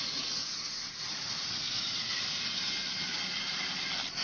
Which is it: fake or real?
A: real